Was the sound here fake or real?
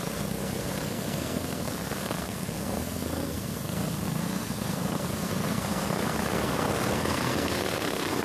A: fake